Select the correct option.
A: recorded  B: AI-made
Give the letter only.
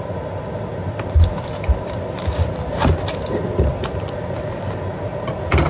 A